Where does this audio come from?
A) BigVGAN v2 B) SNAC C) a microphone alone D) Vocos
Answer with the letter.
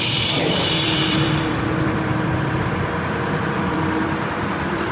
A